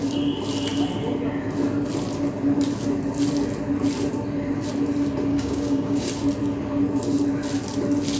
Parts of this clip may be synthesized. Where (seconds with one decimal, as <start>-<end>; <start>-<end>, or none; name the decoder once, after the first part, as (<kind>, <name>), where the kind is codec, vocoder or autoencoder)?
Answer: 5.3-6.1 (codec, DAC)